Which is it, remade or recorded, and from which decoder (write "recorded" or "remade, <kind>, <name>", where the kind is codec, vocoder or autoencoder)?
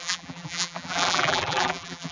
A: remade, vocoder, BigVGAN v2